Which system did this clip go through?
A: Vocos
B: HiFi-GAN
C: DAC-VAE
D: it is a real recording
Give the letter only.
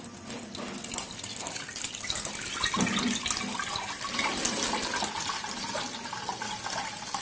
D